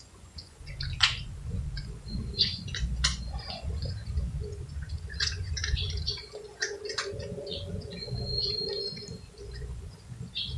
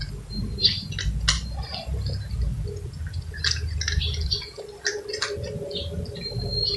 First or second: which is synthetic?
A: first